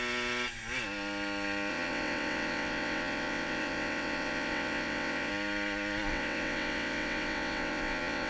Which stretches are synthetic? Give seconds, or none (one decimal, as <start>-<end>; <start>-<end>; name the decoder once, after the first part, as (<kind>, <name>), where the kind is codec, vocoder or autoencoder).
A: 1.7-5.3 (vocoder, WaveNeXt); 6.1-8.3

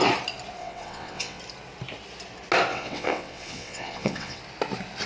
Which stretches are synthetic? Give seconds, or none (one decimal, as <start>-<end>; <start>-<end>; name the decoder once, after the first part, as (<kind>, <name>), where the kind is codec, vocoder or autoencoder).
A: 0.6-1.4 (vocoder, WaveNeXt); 2.7-4.4

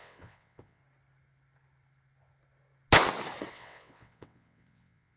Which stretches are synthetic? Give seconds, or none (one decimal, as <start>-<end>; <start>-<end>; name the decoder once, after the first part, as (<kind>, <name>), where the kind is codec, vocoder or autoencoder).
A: 0.0-0.8 (vocoder, WaveNeXt); 3.5-5.2

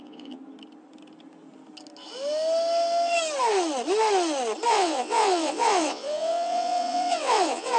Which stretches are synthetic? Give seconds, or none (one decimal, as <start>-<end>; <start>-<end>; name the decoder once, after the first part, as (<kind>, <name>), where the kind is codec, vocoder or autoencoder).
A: 0.0-0.4 (vocoder, WaveNeXt); 4.7-7.8

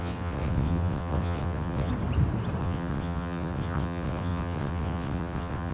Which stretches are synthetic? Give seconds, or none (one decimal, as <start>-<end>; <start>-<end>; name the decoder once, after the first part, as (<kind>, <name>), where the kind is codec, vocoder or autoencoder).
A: 0.0-1.9 (vocoder, WaveNeXt); 2.6-5.7